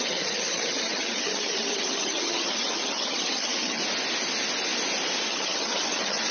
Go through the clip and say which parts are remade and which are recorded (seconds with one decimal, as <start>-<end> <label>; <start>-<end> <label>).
0.0-3.8 remade; 3.8-5.3 recorded; 5.3-6.3 remade